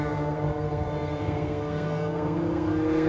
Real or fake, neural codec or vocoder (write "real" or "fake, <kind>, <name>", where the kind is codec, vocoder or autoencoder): fake, codec, SNAC